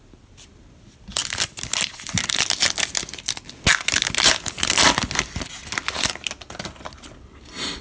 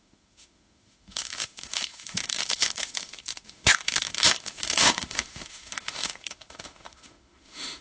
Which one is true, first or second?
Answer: first